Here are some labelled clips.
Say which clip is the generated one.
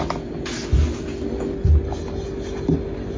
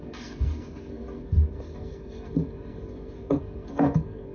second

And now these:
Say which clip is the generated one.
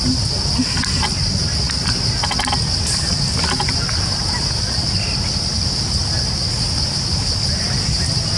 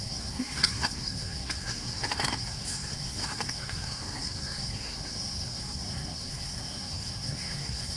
second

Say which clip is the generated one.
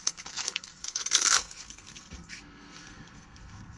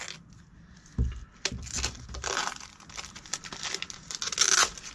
first